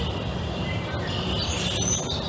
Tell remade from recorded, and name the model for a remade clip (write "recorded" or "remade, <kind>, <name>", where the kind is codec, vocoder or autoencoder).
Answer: recorded